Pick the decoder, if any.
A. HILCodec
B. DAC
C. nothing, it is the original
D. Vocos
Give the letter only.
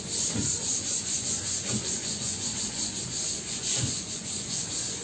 D